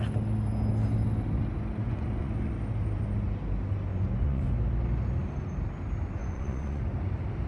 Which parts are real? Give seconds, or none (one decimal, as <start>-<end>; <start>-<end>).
0.0-1.8; 2.5-3.9; 4.5-6.2; 6.8-7.5